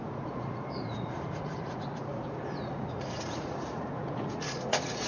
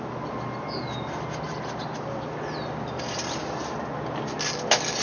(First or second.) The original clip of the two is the second